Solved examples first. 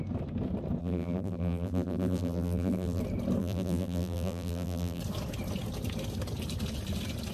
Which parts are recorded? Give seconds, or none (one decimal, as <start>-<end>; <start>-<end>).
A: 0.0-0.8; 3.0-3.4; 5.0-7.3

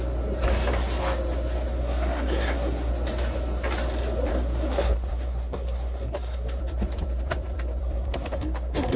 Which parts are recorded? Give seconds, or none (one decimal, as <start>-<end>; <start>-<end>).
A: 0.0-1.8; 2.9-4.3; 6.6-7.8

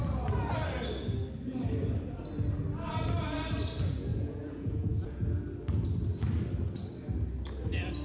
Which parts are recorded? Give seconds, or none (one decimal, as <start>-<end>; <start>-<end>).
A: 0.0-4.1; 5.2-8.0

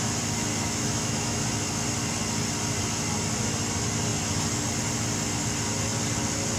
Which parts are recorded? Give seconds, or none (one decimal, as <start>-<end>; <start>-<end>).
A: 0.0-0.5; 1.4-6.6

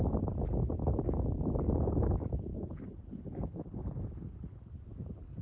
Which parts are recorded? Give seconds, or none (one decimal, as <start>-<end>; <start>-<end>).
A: 0.0-2.5; 4.6-5.4

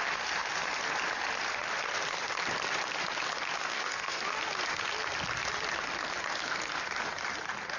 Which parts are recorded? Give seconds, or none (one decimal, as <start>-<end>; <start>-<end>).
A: 0.0-3.7; 4.2-7.8

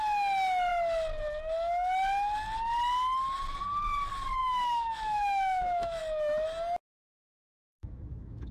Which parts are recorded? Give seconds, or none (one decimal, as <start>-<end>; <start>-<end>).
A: 0.0-4.4; 6.0-7.6